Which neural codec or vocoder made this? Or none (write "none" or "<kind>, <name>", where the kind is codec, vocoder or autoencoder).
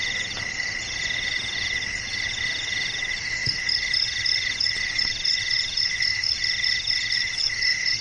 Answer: none